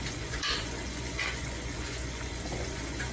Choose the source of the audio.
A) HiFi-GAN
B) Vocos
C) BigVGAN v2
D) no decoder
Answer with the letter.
B